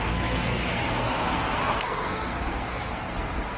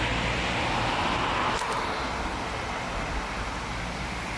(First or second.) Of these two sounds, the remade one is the first